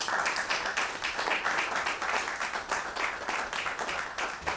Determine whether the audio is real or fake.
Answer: real